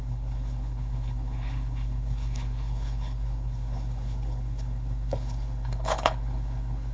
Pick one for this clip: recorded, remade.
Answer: remade